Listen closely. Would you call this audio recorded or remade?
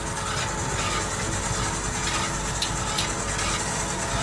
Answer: recorded